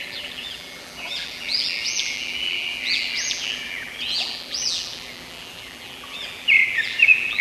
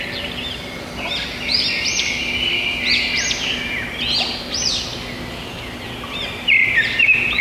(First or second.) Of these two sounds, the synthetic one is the first